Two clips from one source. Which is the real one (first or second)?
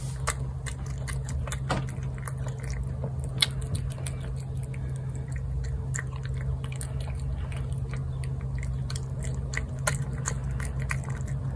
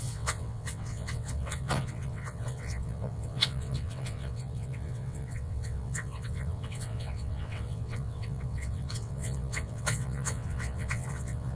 first